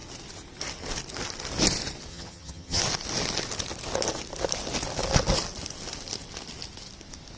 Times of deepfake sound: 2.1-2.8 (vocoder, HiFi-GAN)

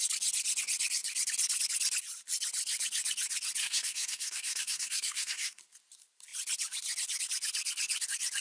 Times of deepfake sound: 3.6-5.6 (codec, SNAC)

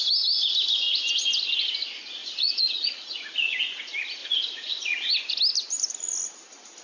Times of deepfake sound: 2.2-3.8 (vocoder, Vocos); 4.2-5.1